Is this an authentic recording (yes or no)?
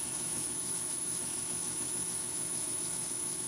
no